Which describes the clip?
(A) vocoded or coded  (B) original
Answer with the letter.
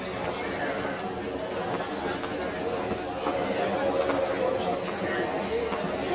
B